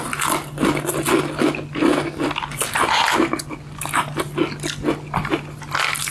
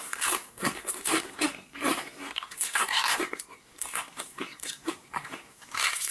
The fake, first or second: second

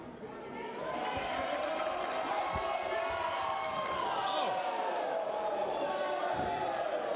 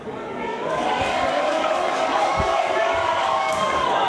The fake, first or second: second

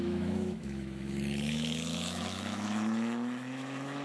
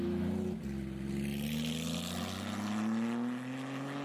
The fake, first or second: first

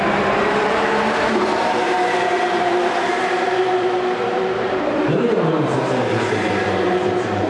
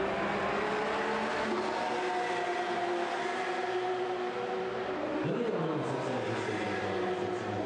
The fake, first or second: first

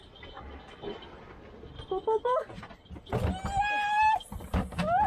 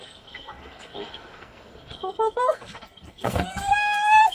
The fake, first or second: second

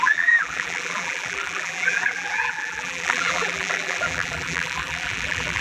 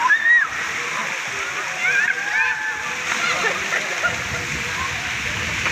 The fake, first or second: first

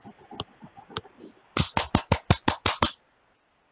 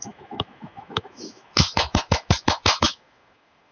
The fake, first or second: second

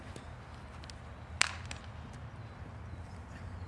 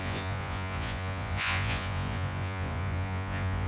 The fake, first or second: second